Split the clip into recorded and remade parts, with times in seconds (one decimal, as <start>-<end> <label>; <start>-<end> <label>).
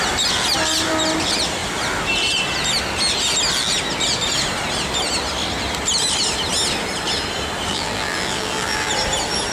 0.0-7.7 recorded; 7.7-8.9 remade; 8.9-9.5 recorded